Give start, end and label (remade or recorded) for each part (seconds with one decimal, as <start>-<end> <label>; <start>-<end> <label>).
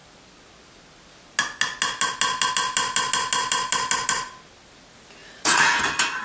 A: 0.0-5.2 recorded; 5.2-5.8 remade; 5.8-6.2 recorded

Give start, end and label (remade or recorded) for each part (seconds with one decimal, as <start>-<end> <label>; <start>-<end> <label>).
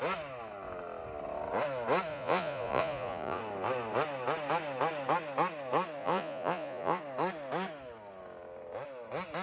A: 0.0-2.1 recorded; 2.1-3.4 remade; 3.4-6.0 recorded; 6.0-7.0 remade; 7.0-9.4 recorded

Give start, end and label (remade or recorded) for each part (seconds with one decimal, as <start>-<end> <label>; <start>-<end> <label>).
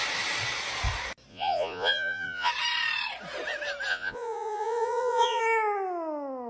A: 0.0-1.3 recorded; 1.3-2.5 remade; 2.5-3.9 recorded; 3.9-5.4 remade; 5.4-6.5 recorded